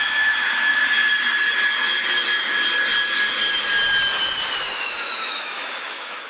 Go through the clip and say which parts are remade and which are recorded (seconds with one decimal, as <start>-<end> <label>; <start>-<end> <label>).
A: 0.0-0.8 remade; 0.8-4.6 recorded; 4.6-6.3 remade